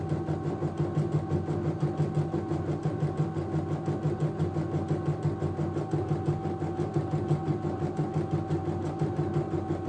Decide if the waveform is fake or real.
real